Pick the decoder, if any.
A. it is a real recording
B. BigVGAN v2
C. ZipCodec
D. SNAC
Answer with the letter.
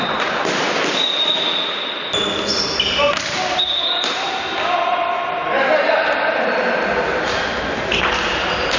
A